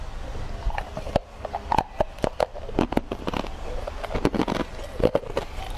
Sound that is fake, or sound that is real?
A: real